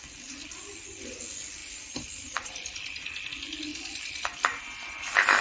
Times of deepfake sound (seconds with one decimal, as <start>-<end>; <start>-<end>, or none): 0.4-1.2; 1.6-3.3